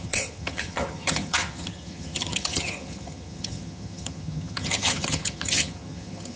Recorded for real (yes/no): no